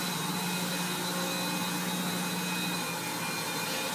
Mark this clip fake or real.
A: real